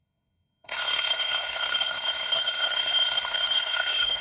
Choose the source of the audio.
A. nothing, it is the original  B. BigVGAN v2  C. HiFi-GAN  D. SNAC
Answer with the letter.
D